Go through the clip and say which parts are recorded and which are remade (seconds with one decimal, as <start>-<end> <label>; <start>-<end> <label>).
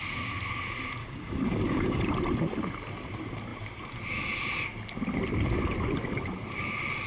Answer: 0.0-1.0 recorded; 1.0-2.0 remade; 2.0-7.1 recorded